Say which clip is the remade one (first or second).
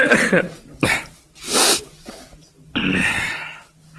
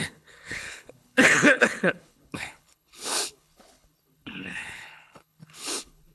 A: second